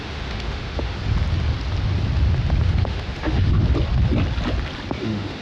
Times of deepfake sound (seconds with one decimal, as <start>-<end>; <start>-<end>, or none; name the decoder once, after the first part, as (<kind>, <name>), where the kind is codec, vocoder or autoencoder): 0.0-1.0 (autoencoder, DAC-VAE); 2.6-3.5; 5.0-5.4